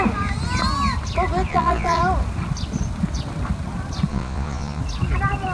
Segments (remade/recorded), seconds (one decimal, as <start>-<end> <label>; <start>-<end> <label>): 0.0-1.5 recorded; 1.5-2.0 remade; 2.0-4.1 recorded; 4.1-4.8 remade; 4.8-5.5 recorded